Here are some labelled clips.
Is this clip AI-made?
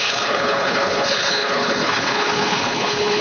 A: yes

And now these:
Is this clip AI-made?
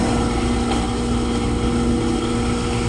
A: yes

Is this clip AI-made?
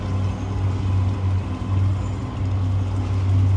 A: no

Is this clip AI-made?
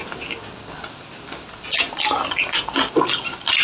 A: no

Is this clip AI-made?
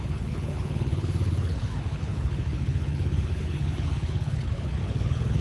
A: yes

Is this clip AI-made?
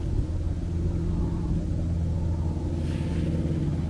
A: no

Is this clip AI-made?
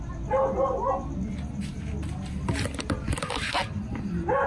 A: no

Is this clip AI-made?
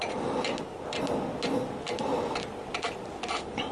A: no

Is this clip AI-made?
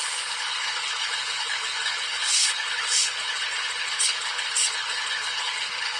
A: yes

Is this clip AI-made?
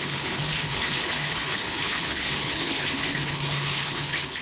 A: yes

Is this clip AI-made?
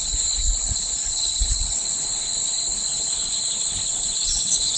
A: yes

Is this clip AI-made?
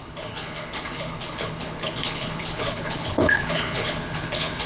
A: yes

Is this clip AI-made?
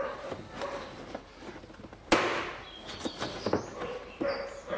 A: no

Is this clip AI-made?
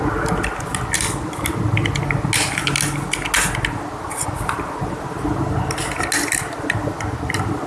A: no